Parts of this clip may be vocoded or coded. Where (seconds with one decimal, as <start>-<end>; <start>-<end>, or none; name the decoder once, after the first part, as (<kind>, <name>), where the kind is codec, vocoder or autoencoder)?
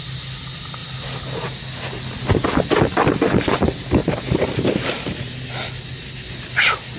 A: 4.0-5.2 (vocoder, BigVGAN v2)